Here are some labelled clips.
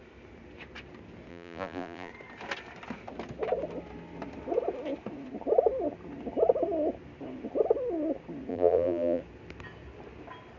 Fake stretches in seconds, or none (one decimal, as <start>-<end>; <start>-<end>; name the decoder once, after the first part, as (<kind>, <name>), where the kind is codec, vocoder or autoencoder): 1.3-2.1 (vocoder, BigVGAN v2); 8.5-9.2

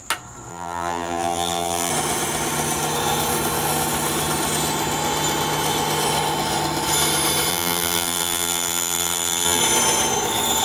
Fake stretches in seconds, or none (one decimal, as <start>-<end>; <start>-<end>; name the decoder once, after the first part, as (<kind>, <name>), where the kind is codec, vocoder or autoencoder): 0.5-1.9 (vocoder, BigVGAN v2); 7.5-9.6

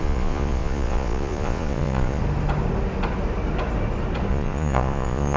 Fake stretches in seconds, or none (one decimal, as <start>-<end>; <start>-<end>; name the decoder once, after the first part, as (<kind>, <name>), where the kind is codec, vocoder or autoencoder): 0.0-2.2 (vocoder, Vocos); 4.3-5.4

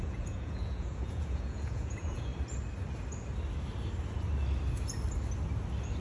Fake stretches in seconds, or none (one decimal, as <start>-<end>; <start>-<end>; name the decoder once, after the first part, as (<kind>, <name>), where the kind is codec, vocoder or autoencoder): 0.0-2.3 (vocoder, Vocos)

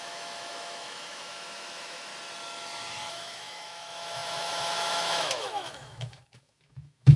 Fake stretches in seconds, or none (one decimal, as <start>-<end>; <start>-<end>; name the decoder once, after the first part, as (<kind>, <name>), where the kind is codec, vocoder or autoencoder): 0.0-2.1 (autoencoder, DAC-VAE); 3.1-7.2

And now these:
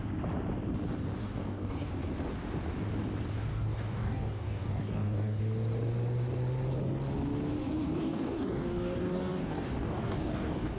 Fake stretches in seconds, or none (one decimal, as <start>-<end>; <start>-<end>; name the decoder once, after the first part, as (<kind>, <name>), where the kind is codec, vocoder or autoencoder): 1.2-1.9 (codec, DAC); 3.5-5.4; 7.6-10.8